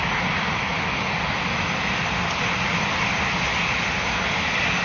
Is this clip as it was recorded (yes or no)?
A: yes